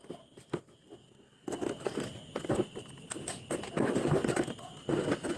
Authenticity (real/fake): real